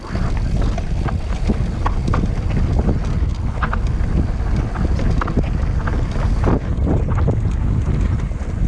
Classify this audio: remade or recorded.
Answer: recorded